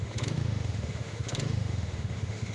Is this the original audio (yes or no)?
no